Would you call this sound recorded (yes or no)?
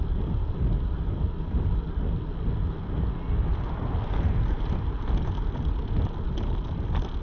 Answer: yes